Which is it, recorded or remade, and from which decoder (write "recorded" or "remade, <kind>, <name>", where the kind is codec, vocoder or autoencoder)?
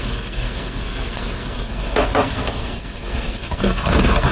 remade, codec, SNAC